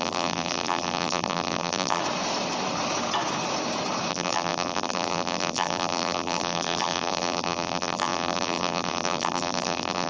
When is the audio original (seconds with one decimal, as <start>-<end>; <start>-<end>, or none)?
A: 2.0-4.1